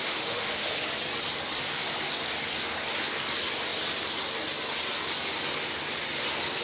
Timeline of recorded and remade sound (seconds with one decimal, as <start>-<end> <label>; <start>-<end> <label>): 0.0-0.7 remade; 0.7-6.6 recorded